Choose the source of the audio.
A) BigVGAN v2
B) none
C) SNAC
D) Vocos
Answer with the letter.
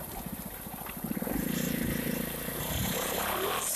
A